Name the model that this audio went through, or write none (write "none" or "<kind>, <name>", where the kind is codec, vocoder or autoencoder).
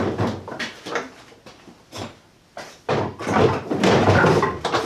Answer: none